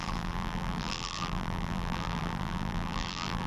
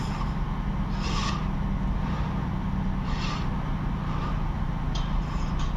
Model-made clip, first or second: first